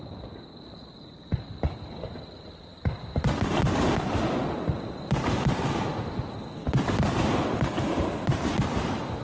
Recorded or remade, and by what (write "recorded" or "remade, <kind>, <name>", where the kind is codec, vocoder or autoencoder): remade, vocoder, BigVGAN v2